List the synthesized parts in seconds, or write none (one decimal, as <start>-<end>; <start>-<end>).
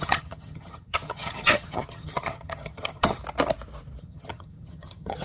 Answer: 0.0-3.2; 4.0-5.2